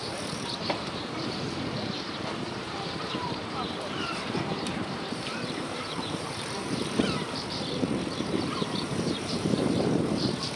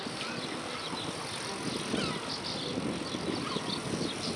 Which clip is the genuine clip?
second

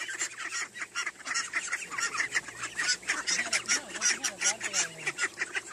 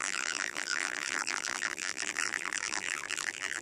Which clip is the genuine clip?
first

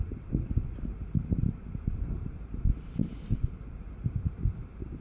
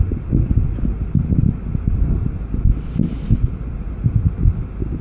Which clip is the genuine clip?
second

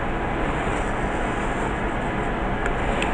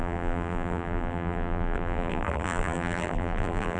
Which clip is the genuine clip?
first